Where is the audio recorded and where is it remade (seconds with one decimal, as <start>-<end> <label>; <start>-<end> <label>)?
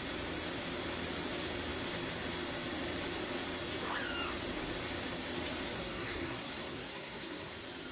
0.0-5.8 recorded; 5.8-7.5 remade; 7.5-7.9 recorded